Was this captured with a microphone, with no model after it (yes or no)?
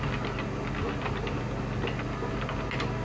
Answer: yes